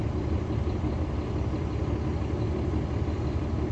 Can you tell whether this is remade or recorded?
recorded